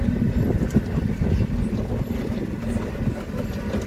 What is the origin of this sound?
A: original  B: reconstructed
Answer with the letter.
A